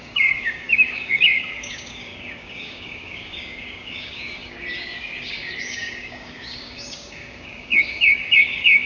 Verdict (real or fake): fake